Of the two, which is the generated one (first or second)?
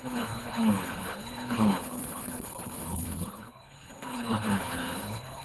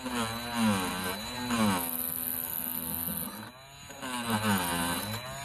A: first